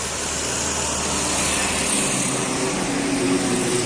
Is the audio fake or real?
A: real